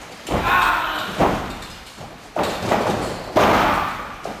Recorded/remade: recorded